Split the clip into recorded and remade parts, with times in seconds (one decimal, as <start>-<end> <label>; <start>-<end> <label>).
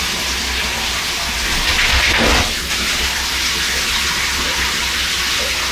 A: 0.0-5.7 recorded